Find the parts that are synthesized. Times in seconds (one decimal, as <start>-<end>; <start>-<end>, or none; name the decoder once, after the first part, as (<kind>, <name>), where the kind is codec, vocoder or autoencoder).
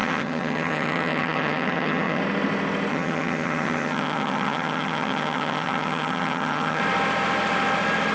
0.0-2.2 (vocoder, HiFi-GAN); 2.9-6.8